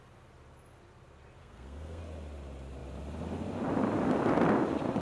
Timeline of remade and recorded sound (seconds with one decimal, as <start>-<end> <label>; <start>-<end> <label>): 0.0-1.4 recorded; 1.4-2.0 remade; 2.0-5.0 recorded